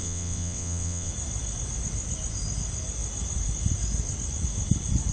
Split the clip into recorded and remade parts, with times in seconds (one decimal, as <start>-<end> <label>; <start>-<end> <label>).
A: 0.0-1.1 remade; 1.1-5.1 recorded